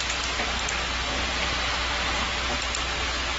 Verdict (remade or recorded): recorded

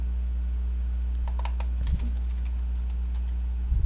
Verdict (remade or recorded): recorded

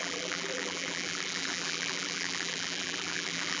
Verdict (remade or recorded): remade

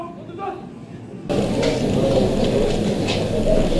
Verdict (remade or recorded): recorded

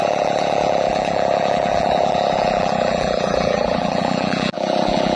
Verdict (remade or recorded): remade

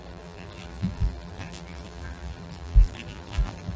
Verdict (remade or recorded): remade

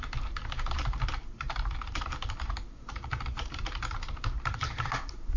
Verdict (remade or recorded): remade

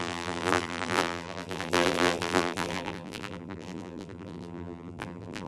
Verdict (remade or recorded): remade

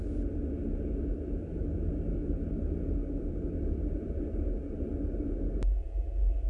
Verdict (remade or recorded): remade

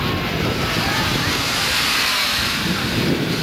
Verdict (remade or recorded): remade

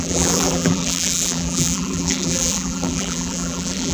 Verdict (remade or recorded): remade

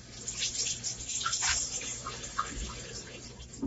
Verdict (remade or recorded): recorded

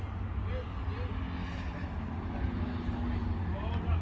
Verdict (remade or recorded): recorded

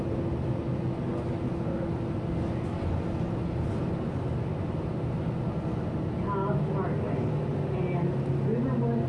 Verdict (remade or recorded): recorded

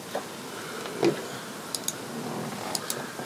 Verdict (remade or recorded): recorded